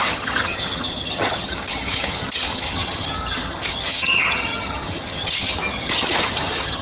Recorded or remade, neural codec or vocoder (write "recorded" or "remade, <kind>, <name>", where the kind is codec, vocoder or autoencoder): remade, vocoder, HiFi-GAN